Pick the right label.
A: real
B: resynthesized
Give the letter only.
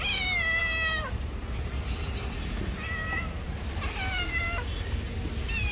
A